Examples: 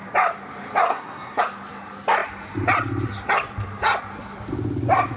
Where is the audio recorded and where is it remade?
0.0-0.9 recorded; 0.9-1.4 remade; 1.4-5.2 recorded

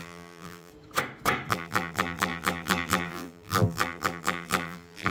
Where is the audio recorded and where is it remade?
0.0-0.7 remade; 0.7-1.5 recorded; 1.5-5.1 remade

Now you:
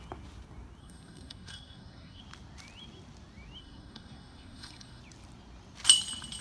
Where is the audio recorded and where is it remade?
0.0-0.8 recorded; 0.8-2.2 remade; 2.2-3.6 recorded; 3.6-5.0 remade; 5.0-6.4 recorded

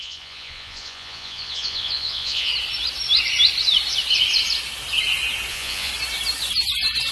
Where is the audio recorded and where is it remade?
0.0-2.5 remade; 2.5-5.5 recorded; 5.5-5.9 remade; 5.9-7.1 recorded

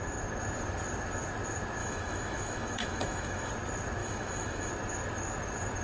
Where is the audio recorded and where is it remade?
0.0-1.8 recorded; 1.8-3.5 remade; 3.5-4.0 recorded; 4.0-4.7 remade; 4.7-5.8 recorded

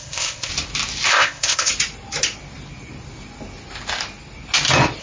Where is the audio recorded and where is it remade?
0.0-0.5 remade; 0.5-1.1 recorded; 1.1-1.7 remade; 1.7-5.0 recorded